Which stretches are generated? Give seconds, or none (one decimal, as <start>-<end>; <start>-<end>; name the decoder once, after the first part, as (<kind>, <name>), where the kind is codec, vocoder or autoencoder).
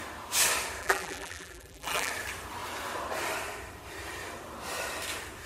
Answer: 0.8-2.1 (vocoder, BigVGAN v2)